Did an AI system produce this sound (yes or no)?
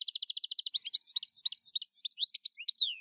no